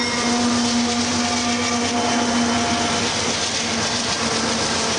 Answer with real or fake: real